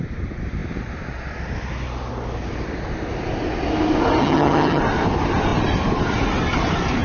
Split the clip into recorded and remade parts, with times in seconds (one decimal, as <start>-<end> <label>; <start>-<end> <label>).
0.0-4.2 recorded; 4.2-4.8 remade; 4.8-7.0 recorded